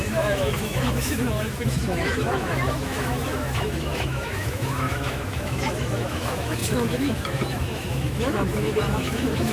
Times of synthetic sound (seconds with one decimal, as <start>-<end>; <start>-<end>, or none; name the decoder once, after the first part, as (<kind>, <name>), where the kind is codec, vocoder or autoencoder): 0.0-9.5 (autoencoder, DAC-VAE)